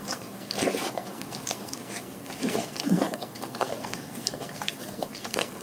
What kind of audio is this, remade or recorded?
remade